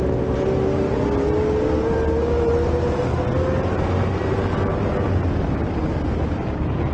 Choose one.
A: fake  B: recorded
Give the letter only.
B